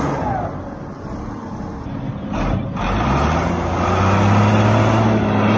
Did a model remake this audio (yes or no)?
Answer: no